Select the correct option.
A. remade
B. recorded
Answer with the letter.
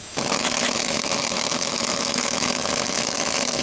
A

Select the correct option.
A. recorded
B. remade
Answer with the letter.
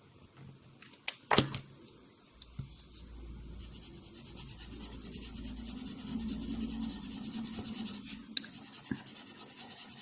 A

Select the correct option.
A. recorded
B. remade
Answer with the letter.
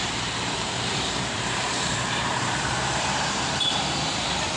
B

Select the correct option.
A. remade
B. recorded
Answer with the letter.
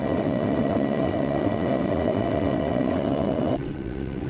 A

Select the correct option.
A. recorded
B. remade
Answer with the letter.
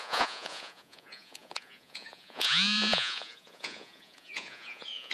B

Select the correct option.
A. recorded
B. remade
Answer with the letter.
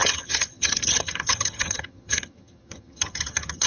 B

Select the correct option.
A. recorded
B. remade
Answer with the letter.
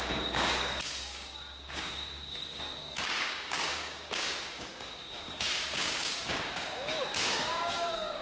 B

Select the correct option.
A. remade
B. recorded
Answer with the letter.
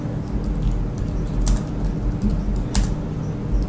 B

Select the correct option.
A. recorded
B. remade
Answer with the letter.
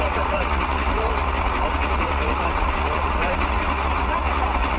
B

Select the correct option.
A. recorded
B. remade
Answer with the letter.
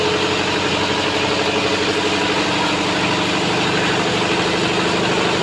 A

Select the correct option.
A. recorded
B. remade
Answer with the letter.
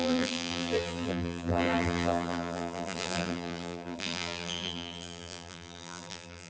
B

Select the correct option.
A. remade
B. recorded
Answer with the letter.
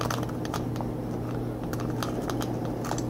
A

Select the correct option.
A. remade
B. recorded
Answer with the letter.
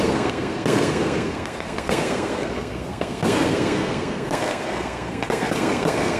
A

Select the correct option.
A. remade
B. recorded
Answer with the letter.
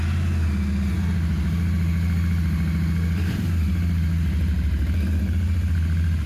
B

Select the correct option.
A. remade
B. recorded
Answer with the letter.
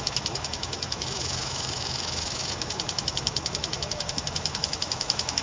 A